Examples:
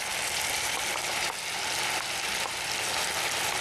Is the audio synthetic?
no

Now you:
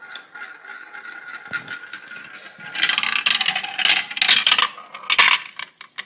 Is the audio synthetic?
no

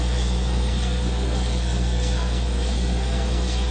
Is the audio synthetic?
yes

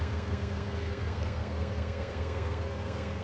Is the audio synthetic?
yes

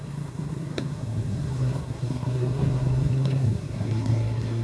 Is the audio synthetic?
yes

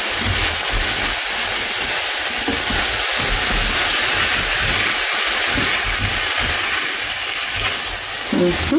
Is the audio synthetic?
no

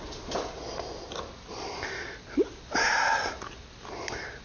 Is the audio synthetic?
no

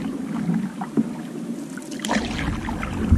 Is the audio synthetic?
no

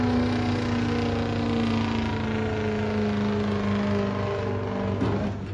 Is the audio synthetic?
no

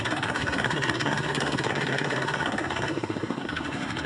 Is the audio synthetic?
yes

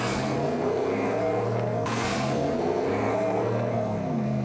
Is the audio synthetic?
yes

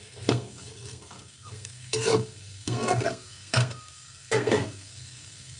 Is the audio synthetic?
yes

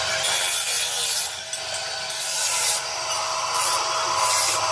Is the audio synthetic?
no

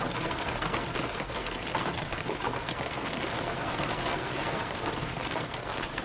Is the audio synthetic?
yes